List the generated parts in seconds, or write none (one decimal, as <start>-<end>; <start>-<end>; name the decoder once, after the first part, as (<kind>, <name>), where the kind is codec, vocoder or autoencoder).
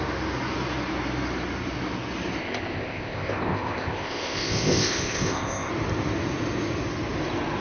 2.4-5.7 (codec, ZipCodec)